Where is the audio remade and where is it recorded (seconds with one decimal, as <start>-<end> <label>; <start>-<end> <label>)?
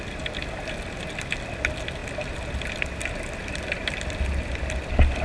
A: 0.0-5.2 recorded